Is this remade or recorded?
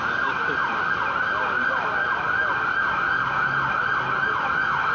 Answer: recorded